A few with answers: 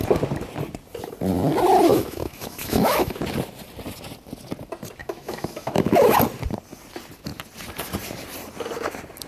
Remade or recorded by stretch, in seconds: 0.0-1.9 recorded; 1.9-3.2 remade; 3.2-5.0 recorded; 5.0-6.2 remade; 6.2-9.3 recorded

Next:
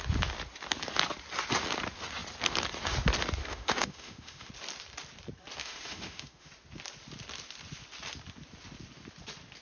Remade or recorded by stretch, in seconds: 0.0-3.4 recorded; 3.4-4.5 remade; 4.5-5.6 recorded; 5.6-6.5 remade; 6.5-9.6 recorded

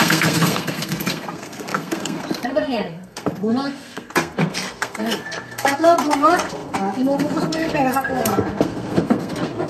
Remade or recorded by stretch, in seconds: 0.0-9.7 remade

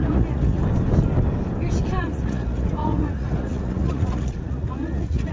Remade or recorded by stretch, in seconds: 0.0-0.6 remade; 0.6-2.0 recorded; 2.0-5.3 remade

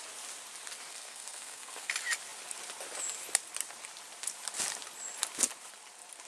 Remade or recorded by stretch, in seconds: 0.0-0.9 recorded; 0.9-1.9 remade; 1.9-6.3 recorded

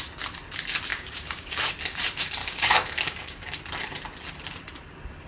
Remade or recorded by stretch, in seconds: 0.0-0.9 recorded; 0.9-1.7 remade; 1.7-2.4 recorded; 2.4-3.6 remade; 3.6-5.3 recorded

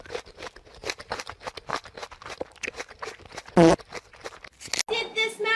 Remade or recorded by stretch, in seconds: 0.0-5.6 recorded